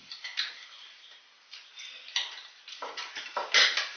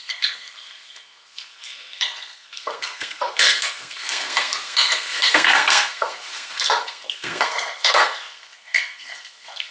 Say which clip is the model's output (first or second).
second